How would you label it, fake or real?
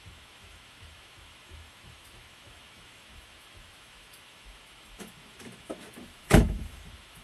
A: fake